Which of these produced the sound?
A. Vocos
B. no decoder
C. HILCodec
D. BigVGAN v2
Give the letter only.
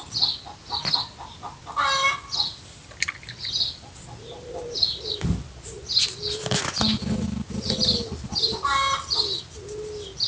B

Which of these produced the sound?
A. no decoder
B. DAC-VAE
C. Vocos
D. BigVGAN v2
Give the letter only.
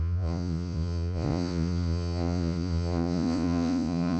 C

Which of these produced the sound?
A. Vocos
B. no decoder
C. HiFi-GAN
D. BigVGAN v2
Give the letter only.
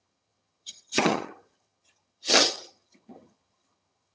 C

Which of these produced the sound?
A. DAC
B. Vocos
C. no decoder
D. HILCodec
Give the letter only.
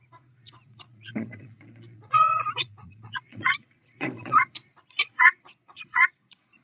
B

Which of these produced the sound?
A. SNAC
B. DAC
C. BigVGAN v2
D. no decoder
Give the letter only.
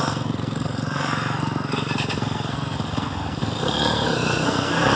A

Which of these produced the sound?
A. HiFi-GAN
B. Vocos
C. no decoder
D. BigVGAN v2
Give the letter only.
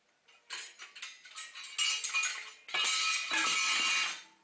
C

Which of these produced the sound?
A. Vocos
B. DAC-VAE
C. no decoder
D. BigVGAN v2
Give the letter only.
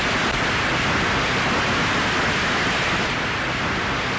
C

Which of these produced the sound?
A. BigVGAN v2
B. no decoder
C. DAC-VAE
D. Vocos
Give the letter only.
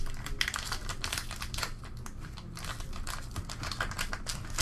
B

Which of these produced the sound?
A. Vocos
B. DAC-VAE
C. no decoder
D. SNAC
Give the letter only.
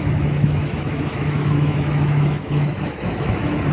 B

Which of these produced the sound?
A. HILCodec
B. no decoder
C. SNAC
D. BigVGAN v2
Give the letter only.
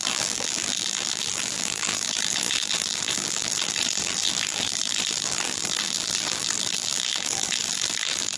D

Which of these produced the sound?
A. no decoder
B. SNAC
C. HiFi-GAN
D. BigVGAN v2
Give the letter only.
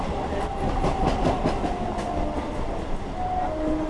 A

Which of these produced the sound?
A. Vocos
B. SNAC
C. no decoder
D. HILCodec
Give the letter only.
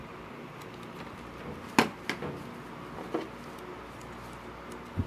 C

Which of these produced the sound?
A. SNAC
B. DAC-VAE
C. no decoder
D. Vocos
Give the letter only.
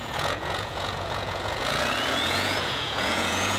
D